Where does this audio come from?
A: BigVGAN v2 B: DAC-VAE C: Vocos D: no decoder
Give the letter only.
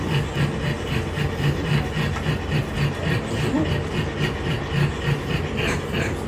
D